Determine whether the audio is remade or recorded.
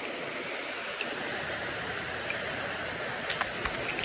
recorded